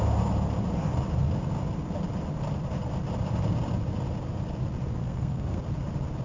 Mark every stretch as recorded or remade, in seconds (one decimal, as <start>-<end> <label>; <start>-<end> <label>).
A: 0.0-5.0 recorded; 5.0-5.6 remade; 5.6-6.2 recorded